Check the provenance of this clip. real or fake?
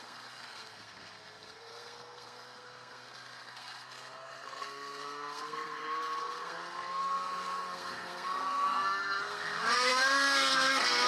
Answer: fake